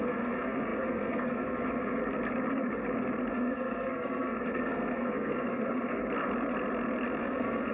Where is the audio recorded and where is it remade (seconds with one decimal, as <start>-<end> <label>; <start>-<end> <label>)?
0.0-2.0 remade; 2.0-3.3 recorded; 3.3-6.0 remade; 6.0-7.2 recorded; 7.2-7.7 remade